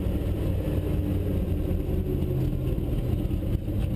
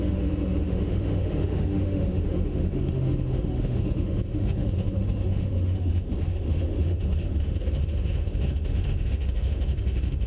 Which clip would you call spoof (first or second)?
second